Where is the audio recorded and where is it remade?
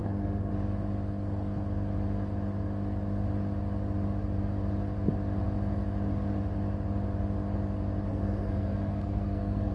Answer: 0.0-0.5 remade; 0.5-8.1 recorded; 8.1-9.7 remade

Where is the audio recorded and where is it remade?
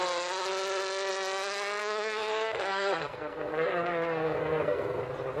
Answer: 0.0-1.8 recorded; 1.8-5.0 remade; 5.0-5.4 recorded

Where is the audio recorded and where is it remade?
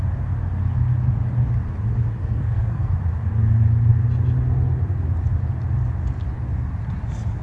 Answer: 0.0-2.2 recorded; 2.2-2.9 remade; 2.9-7.4 recorded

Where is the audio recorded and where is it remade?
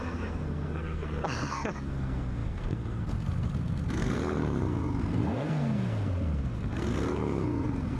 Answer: 0.0-8.0 remade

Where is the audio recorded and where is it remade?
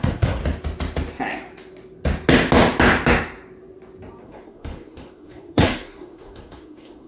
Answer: 0.0-0.4 remade; 0.4-4.2 recorded; 4.2-7.1 remade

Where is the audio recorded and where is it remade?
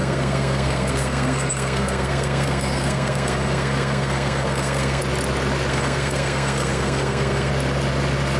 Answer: 0.0-5.0 remade; 5.0-5.7 recorded; 5.7-7.5 remade; 7.5-8.4 recorded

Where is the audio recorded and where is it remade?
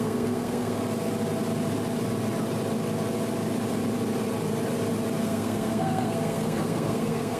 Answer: 0.0-0.8 remade; 0.8-5.2 recorded; 5.2-7.4 remade